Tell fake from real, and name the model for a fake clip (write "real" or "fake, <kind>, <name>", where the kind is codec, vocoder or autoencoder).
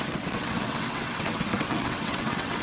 fake, vocoder, WaveNeXt